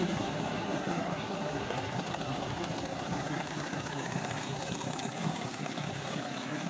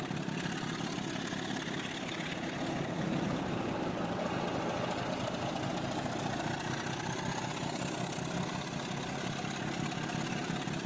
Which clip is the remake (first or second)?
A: first